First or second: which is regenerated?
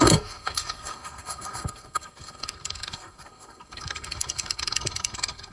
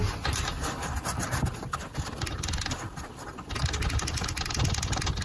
first